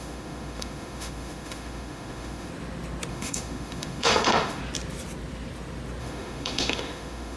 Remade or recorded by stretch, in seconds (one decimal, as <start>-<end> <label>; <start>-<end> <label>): 0.0-2.5 remade; 2.5-3.1 recorded; 3.1-4.6 remade; 4.6-6.0 recorded; 6.0-7.4 remade